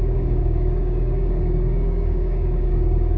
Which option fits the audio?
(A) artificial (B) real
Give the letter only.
A